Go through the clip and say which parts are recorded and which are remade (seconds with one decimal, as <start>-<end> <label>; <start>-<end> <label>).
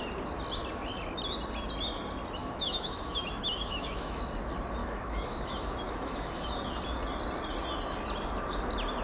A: 0.0-2.4 recorded; 2.4-4.2 remade; 4.2-4.8 recorded; 4.8-6.5 remade; 6.5-9.0 recorded